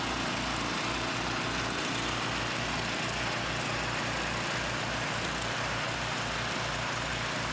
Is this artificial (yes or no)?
no